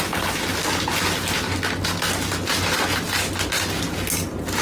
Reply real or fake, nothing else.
real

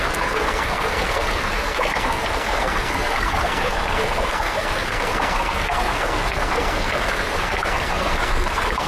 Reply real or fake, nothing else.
fake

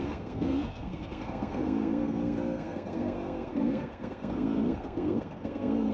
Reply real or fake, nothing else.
fake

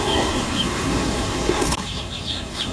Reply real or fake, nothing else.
fake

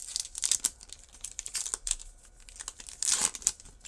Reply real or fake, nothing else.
real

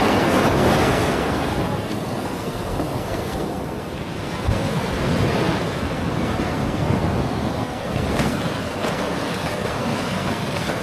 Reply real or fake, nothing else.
fake